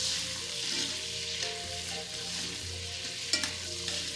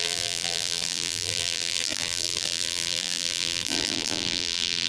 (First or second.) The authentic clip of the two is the first